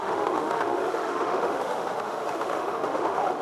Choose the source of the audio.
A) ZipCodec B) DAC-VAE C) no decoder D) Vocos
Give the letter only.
B